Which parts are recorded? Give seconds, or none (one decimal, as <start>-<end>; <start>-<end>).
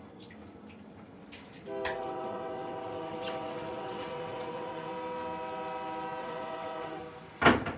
0.0-1.9; 4.9-6.2; 7.0-7.8